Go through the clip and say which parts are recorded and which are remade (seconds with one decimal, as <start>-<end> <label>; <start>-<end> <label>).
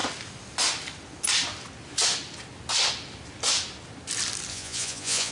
0.0-4.5 recorded; 4.5-5.3 remade